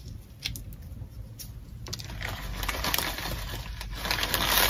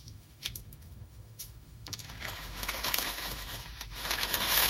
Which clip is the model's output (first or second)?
second